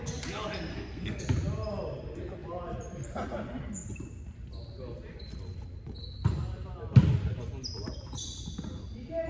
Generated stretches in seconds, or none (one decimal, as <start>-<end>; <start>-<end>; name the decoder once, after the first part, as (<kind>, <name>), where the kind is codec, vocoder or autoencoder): 0.7-1.2 (codec, SNAC)